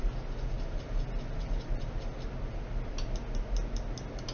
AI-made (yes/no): no